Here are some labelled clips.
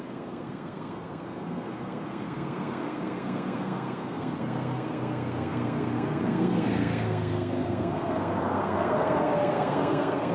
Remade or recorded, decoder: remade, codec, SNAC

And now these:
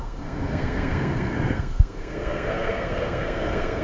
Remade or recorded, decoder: remade, codec, SNAC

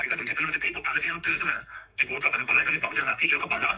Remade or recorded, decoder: remade, codec, SNAC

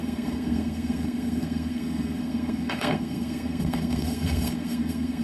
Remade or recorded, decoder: remade, codec, SNAC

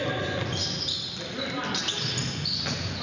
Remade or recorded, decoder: recorded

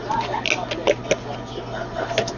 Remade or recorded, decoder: recorded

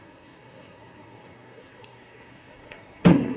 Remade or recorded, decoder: remade, codec, SNAC